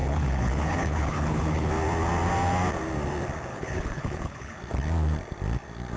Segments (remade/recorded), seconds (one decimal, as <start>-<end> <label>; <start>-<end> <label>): 0.0-1.7 remade; 1.7-3.5 recorded; 3.5-4.6 remade; 4.6-6.0 recorded